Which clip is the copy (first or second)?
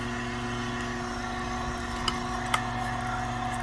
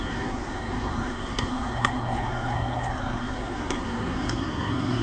second